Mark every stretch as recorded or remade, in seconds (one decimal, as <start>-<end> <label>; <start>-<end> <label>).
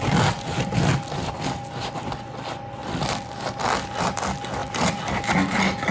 0.0-5.9 recorded